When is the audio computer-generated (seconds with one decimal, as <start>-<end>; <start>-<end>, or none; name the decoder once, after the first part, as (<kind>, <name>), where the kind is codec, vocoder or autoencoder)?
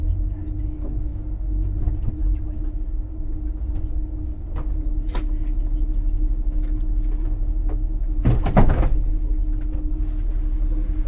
none